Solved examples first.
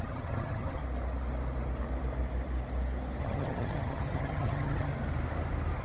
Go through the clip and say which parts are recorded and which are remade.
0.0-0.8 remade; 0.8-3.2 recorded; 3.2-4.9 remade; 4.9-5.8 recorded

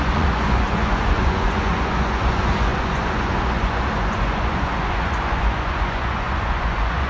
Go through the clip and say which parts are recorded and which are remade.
0.0-7.1 remade

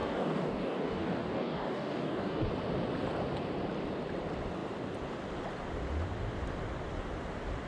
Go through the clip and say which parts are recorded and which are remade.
0.0-2.5 remade; 2.5-7.7 recorded

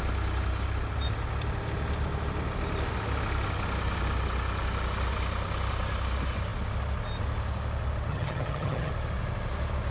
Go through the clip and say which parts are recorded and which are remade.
0.0-8.1 recorded; 8.1-8.9 remade; 8.9-9.9 recorded